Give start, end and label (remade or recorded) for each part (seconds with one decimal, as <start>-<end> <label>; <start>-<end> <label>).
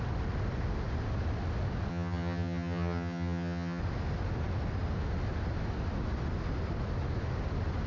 0.0-1.9 recorded; 1.9-3.8 remade; 3.8-7.9 recorded